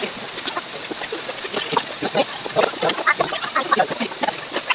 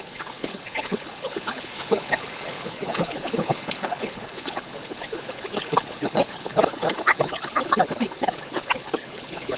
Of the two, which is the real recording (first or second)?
first